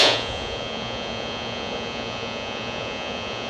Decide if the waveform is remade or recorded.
remade